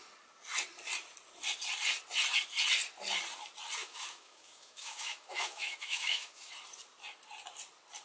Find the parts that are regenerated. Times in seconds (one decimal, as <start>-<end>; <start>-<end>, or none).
3.8-6.5

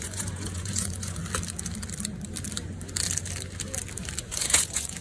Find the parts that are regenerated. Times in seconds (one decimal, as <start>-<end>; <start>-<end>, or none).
0.0-1.2; 4.2-5.0

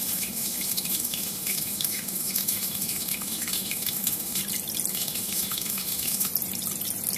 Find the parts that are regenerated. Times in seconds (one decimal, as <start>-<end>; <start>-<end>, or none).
0.0-4.4; 4.9-6.3

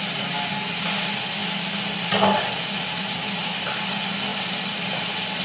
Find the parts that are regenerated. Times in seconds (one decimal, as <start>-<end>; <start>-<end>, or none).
none

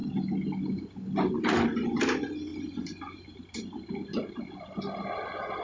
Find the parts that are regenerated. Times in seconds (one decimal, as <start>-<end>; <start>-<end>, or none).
none

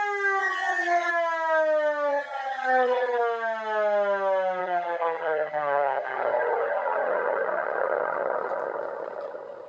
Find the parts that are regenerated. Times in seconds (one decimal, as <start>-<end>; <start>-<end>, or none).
0.4-1.1; 2.1-3.2; 4.6-9.7